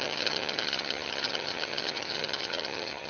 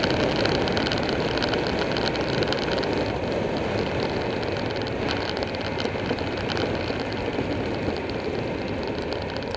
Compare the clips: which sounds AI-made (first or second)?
first